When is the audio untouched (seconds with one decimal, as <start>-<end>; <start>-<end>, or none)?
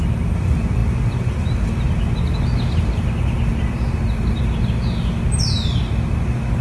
0.0-6.6